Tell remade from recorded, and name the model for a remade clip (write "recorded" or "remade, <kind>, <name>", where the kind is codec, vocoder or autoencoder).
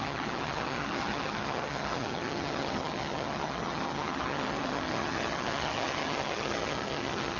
remade, vocoder, HiFi-GAN